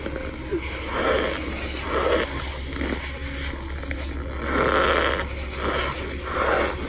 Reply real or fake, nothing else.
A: real